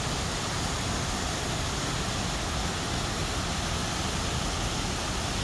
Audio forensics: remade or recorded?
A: recorded